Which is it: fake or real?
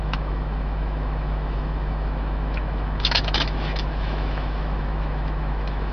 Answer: fake